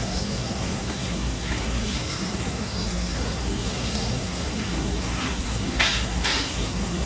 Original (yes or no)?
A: no